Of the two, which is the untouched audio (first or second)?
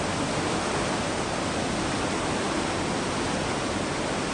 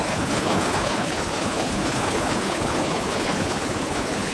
first